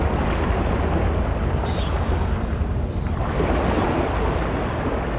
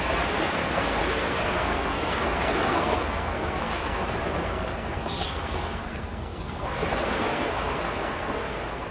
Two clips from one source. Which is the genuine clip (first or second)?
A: first